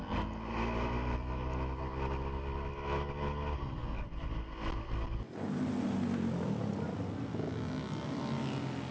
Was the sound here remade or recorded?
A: recorded